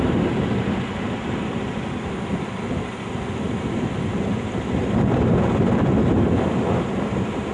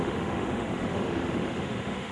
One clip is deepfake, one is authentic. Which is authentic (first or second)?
first